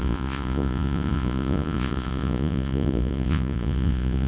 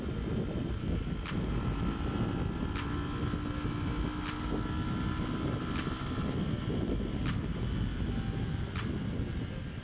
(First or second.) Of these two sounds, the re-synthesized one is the first